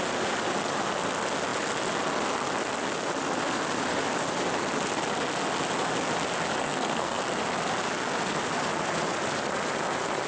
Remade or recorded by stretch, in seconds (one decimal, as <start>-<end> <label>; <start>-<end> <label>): 0.0-6.6 recorded; 6.6-7.2 remade; 7.2-10.3 recorded